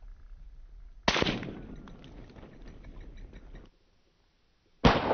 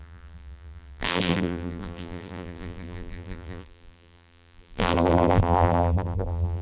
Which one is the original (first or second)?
first